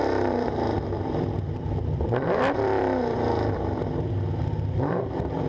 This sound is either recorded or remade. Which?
remade